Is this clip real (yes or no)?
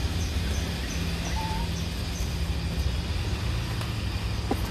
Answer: yes